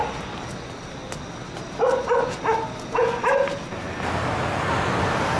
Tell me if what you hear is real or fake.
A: real